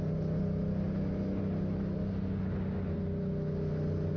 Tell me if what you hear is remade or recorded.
recorded